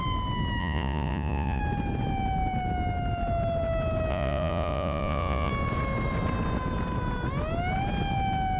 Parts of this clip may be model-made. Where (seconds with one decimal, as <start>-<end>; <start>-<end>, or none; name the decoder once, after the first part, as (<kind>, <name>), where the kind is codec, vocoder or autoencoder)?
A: 0.6-1.6 (vocoder, Vocos); 4.1-5.5